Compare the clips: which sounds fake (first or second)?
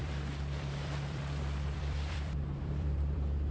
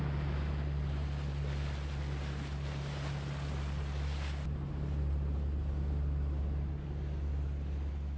first